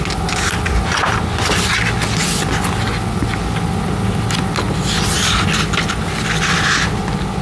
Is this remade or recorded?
recorded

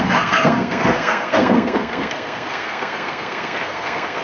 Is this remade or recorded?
remade